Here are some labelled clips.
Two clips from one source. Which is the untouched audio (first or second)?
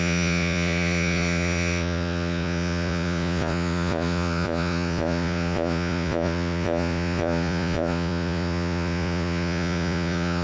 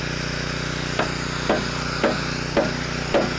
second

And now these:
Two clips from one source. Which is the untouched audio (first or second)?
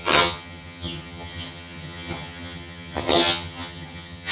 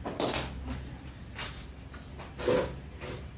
second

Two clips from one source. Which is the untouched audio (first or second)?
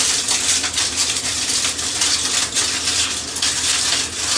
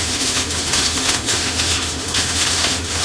first